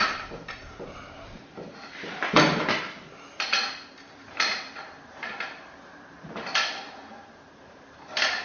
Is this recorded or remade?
remade